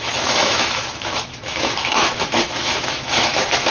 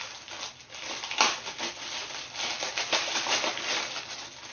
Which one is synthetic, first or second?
first